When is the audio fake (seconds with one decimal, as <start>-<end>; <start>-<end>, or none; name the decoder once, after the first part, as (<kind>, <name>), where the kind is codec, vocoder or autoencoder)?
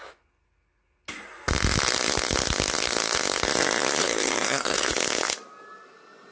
4.0-4.9 (codec, SNAC)